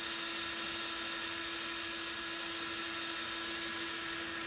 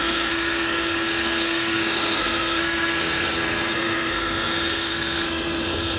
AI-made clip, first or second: second